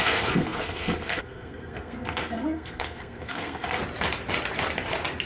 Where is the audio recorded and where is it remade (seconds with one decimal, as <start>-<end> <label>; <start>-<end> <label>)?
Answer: 0.0-3.8 remade; 3.8-5.3 recorded